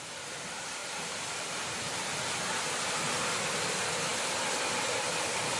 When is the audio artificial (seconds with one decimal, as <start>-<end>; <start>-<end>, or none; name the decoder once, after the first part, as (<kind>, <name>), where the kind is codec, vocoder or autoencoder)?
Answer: none